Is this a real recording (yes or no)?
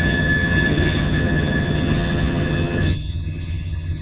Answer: no